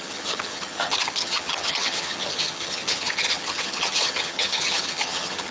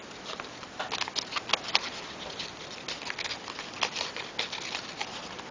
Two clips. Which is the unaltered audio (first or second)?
second